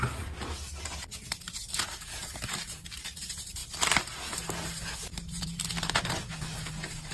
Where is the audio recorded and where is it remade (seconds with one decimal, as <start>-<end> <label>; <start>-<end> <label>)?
0.0-7.1 recorded